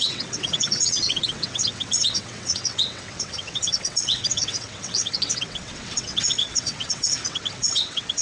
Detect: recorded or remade remade